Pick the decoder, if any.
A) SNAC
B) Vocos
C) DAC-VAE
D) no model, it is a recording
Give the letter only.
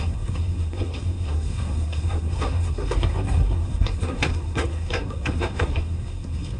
A